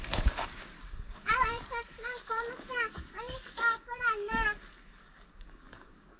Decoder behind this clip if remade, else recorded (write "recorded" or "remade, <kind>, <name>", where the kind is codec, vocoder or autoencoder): remade, codec, DAC